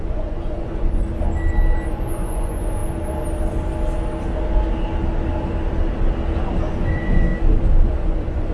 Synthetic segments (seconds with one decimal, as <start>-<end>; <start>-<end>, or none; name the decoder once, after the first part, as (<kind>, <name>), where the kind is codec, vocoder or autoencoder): 0.0-1.0 (vocoder, Vocos); 1.9-2.8; 6.7-7.3; 7.8-8.5